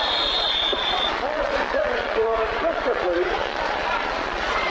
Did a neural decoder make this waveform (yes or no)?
yes